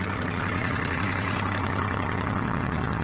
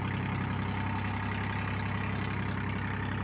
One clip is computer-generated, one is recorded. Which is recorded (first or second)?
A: second